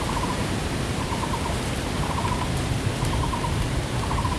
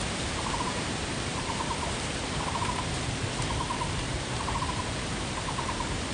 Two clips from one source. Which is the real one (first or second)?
first